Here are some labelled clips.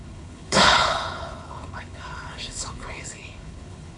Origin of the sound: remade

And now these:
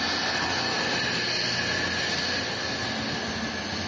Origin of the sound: recorded